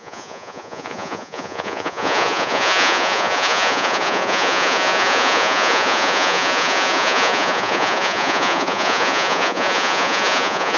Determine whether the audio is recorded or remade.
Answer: remade